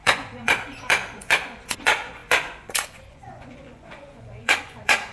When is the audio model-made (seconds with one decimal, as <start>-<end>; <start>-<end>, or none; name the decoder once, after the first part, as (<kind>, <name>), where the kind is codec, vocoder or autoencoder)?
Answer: 0.0-5.1 (vocoder, Vocos)